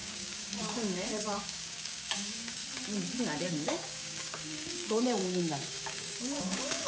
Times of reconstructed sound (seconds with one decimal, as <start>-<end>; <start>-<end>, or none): 0.0-2.6; 3.5-6.9